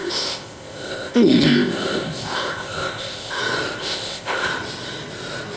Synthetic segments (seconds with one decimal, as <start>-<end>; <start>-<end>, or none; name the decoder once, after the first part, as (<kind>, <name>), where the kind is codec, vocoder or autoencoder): 0.0-3.4 (codec, ZipCodec); 3.8-4.5